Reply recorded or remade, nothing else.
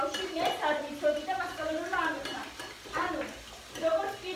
recorded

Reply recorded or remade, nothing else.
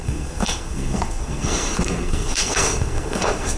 remade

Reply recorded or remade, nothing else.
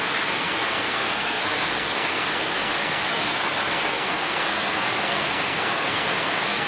remade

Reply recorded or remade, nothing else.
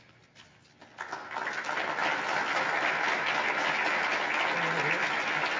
recorded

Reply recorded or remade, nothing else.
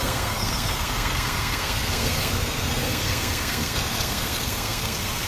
remade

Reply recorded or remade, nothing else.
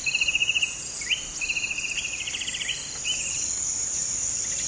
recorded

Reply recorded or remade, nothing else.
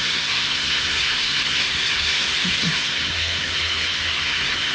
remade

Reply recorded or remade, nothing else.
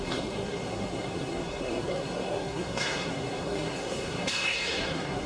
remade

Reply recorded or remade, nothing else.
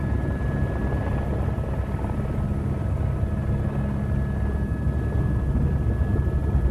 recorded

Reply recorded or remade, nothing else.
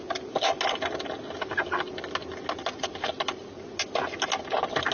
recorded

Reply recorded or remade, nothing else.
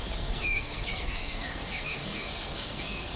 remade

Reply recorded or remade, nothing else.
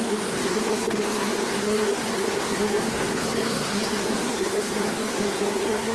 remade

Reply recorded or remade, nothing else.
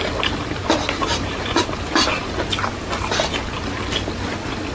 recorded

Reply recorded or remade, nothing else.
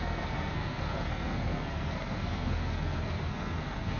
remade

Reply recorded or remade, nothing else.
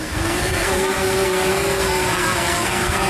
remade